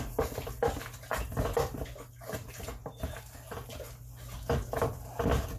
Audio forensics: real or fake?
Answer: real